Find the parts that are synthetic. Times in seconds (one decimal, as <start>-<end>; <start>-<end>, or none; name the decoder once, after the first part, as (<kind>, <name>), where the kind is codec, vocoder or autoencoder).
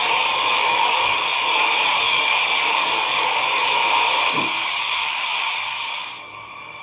0.0-3.8 (codec, DAC); 4.3-6.8